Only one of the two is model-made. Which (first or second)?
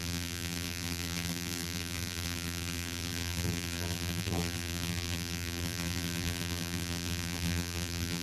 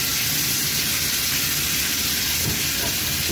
first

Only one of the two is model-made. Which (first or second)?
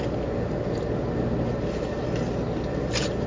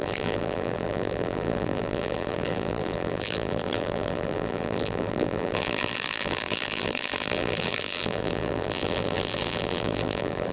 second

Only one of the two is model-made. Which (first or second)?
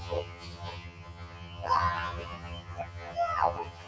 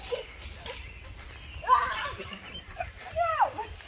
first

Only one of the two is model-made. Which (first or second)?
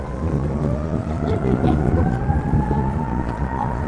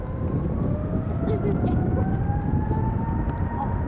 first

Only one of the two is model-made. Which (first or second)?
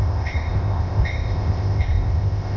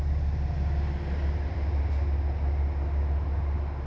first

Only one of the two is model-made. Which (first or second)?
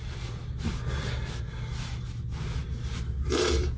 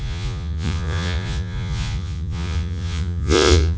second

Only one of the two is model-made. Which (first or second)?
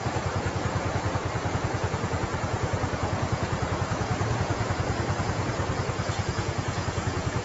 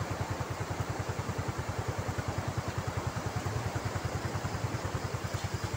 first